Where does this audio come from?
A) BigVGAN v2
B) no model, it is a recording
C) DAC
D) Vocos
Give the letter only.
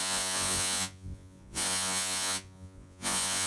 D